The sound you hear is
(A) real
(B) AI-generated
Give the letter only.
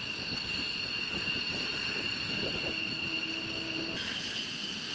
A